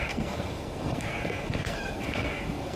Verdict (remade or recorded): remade